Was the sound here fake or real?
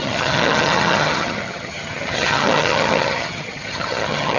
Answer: fake